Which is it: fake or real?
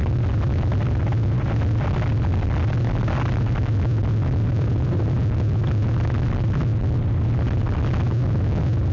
real